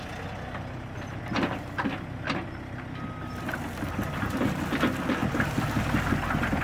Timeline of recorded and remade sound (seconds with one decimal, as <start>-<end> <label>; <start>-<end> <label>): 0.0-5.2 recorded; 5.2-6.1 remade; 6.1-6.6 recorded